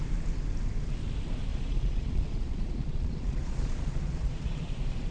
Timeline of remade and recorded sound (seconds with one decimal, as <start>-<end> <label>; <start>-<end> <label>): 0.0-1.5 recorded; 1.5-4.6 remade; 4.6-5.1 recorded